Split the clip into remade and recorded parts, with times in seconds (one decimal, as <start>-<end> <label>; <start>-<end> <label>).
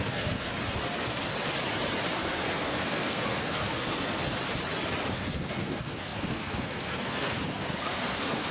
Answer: 0.0-0.5 remade; 0.5-2.2 recorded; 2.2-4.2 remade; 4.2-5.1 recorded; 5.1-8.5 remade